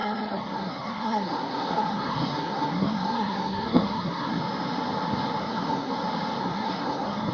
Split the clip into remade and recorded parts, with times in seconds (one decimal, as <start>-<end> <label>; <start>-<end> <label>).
0.0-4.4 remade; 4.4-5.4 recorded; 5.4-5.9 remade; 5.9-6.4 recorded; 6.4-7.3 remade